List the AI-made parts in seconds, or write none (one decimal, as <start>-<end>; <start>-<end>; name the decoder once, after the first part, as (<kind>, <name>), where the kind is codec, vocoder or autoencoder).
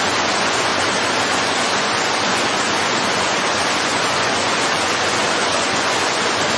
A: 0.0-0.7 (vocoder, Vocos); 1.3-6.6